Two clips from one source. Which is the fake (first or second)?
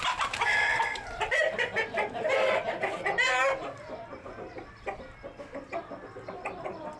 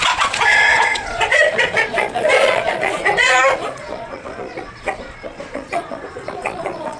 second